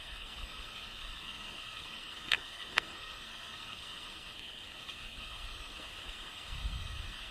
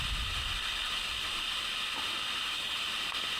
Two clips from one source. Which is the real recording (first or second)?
second